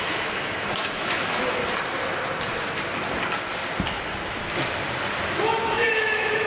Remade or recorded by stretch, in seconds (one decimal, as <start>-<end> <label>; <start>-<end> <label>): 0.0-1.6 remade; 1.6-5.3 recorded; 5.3-6.5 remade

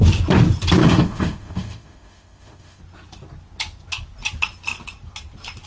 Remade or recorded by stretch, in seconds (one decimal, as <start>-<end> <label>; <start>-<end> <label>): 0.0-0.8 recorded; 0.8-2.8 remade; 2.8-5.7 recorded

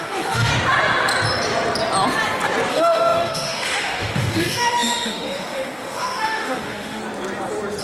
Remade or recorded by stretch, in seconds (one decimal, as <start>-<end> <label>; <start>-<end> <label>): 0.0-0.5 remade; 0.5-2.7 recorded; 2.7-7.0 remade; 7.0-7.8 recorded

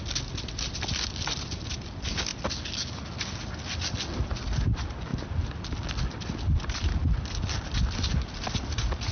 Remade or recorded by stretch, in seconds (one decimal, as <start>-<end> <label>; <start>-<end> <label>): 0.0-9.1 recorded

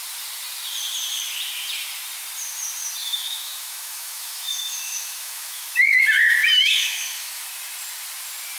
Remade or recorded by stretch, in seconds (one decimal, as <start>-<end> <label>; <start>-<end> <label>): 0.0-3.0 recorded; 3.0-6.0 remade; 6.0-6.4 recorded; 6.4-7.4 remade; 7.4-8.6 recorded

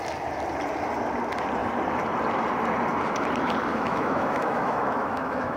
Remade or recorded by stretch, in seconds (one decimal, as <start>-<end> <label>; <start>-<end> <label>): 0.0-3.7 recorded; 3.7-5.6 remade

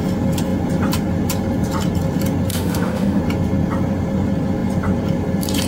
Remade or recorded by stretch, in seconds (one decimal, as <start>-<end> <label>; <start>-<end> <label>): 0.0-2.5 recorded; 2.5-3.2 remade; 3.2-5.7 recorded

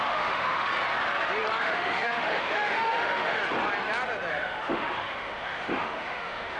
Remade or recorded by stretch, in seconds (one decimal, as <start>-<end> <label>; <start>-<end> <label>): 0.0-0.7 remade; 0.7-1.6 recorded; 1.6-3.4 remade; 3.4-4.3 recorded; 4.3-6.6 remade